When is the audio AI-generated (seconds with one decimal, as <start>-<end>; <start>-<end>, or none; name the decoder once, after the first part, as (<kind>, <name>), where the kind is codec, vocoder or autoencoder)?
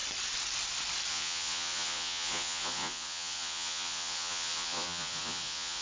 1.1-5.8 (vocoder, Vocos)